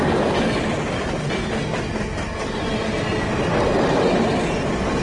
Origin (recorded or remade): recorded